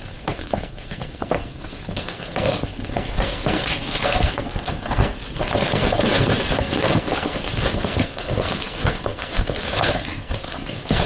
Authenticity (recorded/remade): remade